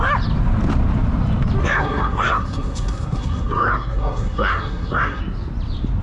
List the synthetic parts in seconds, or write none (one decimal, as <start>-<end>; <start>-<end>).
1.6-5.2